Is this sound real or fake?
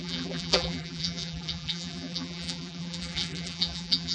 fake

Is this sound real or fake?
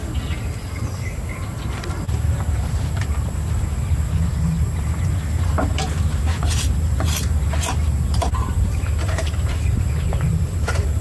fake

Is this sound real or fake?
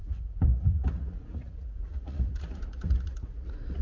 fake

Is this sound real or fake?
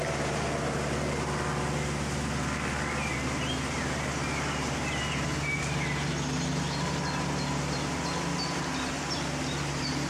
real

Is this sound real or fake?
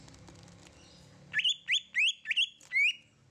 real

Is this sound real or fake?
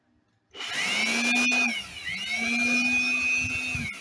real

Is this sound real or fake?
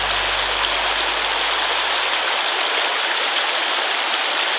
real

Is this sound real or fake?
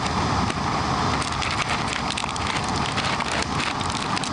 real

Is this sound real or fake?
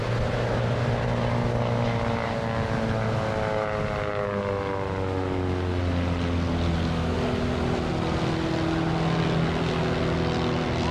real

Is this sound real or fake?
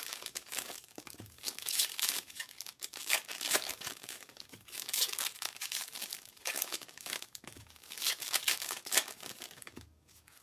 fake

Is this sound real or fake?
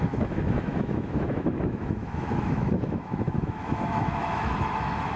fake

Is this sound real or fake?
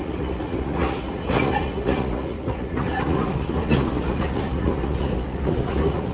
fake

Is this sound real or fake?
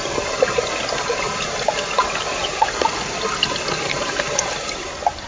real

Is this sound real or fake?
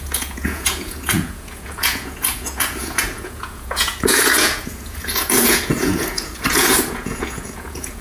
fake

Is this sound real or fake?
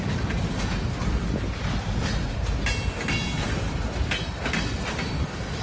real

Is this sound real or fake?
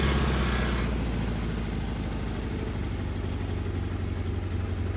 real